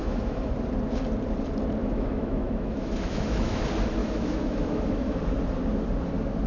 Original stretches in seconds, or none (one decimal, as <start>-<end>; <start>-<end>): 0.5-1.8; 3.6-4.0; 5.2-6.5